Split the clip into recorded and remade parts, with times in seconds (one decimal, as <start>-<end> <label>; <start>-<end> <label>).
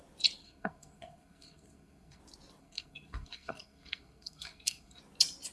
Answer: 0.0-0.4 recorded; 0.4-2.2 remade; 2.2-2.6 recorded; 2.6-5.0 remade; 5.0-5.5 recorded